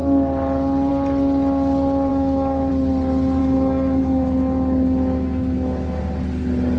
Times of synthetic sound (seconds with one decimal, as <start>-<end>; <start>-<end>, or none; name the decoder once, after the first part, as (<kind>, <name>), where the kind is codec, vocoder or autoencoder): 2.1-2.7 (autoencoder, DAC-VAE); 3.4-6.0